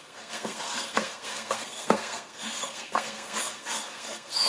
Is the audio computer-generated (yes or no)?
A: yes